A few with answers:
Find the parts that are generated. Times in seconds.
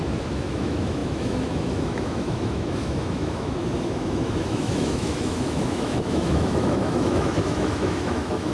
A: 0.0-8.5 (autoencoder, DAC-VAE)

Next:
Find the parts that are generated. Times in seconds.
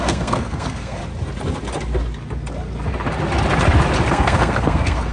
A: 0.0-1.0 (codec, SNAC); 4.1-5.1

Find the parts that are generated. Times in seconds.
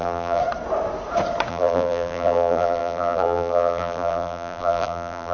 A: 0.0-0.4 (vocoder, BigVGAN v2); 1.5-5.3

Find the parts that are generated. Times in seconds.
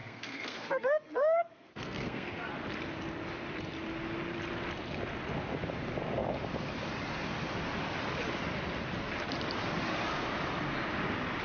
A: 0.0-2.5 (codec, SNAC)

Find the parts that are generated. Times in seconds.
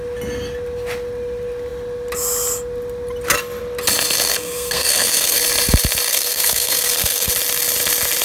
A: 4.3-5.4 (codec, SNAC); 6.1-7.3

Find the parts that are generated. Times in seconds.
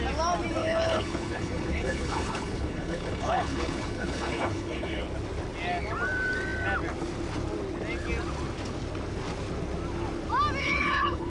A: 0.6-5.0 (codec, HILCodec); 10.6-11.3